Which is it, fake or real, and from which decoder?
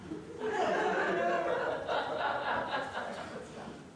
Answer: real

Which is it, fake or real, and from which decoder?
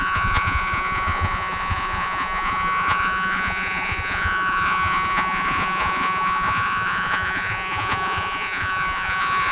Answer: fake, vocoder, Vocos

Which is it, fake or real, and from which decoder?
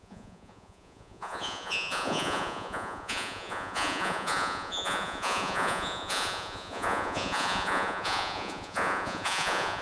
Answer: fake, vocoder, Vocos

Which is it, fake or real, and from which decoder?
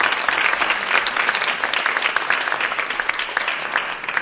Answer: real